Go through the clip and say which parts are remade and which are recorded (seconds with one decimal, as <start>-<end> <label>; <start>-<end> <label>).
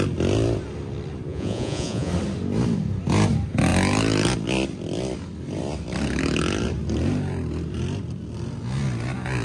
0.0-1.3 recorded; 1.3-2.1 remade; 2.1-9.4 recorded